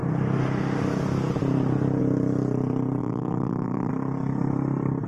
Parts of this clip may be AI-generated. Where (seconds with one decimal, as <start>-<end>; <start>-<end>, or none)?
3.0-3.9